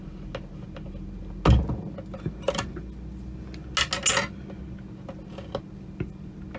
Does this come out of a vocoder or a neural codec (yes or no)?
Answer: no